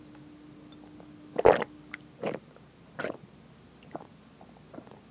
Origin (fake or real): real